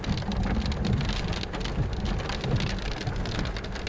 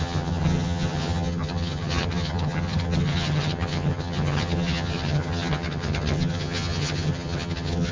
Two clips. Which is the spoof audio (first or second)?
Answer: second